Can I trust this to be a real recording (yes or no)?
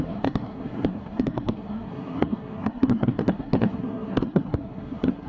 no